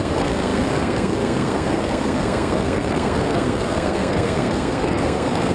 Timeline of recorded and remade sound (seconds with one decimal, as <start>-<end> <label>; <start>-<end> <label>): 0.0-5.5 remade